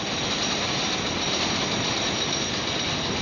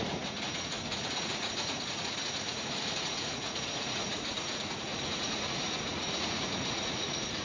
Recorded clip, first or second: first